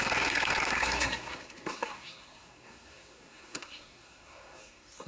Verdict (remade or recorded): remade